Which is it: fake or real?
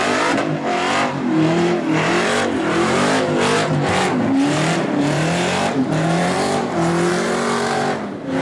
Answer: fake